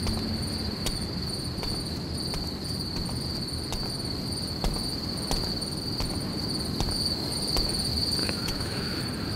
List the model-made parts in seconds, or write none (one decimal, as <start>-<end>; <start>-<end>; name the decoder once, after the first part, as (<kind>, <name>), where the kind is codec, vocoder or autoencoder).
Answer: 8.2-9.0 (autoencoder, DAC-VAE)